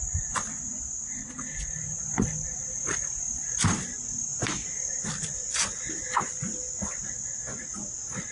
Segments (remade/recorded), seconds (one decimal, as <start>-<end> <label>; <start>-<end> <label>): 0.0-8.3 recorded